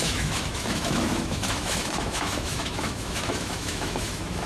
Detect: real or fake fake